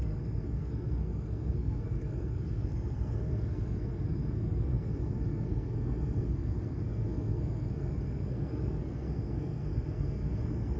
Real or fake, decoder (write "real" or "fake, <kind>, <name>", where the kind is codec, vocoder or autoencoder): fake, codec, SNAC